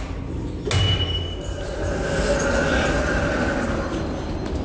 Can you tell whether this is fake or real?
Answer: real